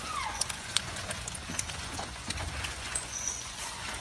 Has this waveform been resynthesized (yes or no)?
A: yes